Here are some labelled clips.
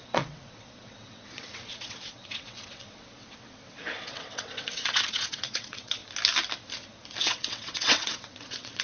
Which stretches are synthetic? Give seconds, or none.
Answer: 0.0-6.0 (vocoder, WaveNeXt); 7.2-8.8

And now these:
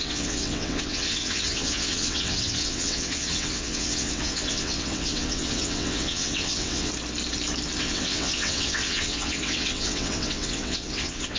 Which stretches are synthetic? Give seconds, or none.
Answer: 0.0-6.9 (vocoder, WaveNeXt); 7.8-11.4

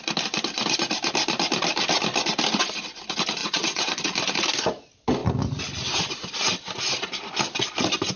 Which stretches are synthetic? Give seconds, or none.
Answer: 3.4-4.0 (vocoder, WaveNeXt)

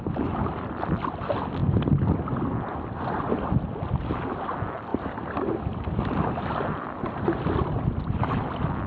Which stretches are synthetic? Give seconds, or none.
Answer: none